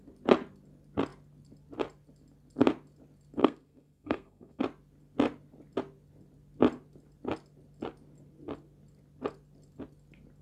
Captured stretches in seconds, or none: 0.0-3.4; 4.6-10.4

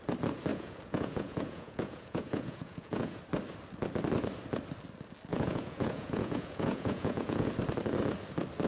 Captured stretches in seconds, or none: 0.0-0.5; 3.2-5.3; 7.5-8.7

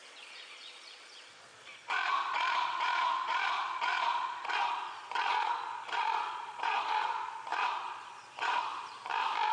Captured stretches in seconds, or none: 8.7-9.5